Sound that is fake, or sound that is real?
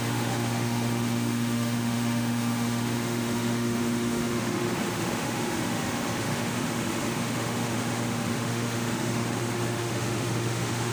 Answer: fake